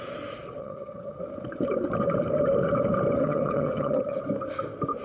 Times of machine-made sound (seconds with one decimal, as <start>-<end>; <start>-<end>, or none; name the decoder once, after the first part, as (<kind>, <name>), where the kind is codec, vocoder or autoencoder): 0.6-1.2 (vocoder, HiFi-GAN); 3.2-4.2

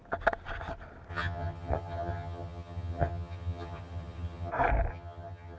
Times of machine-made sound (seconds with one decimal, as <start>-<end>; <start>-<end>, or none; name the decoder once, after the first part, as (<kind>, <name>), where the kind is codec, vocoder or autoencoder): 1.1-4.5 (vocoder, HiFi-GAN); 4.9-5.6

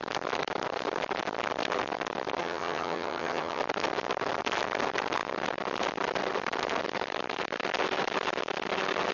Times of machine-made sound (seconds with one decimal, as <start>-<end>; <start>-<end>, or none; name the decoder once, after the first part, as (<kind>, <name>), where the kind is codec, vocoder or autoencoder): 2.4-3.6 (vocoder, HiFi-GAN)

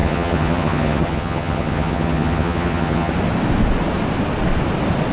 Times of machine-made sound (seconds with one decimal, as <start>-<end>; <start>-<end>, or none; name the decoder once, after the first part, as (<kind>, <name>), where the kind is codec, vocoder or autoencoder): 0.0-3.1 (vocoder, HiFi-GAN)

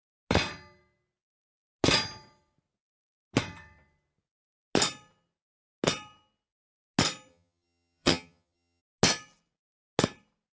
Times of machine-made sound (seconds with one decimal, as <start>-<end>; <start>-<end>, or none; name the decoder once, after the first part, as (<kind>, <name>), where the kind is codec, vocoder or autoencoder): 7.3-8.8 (vocoder, HiFi-GAN)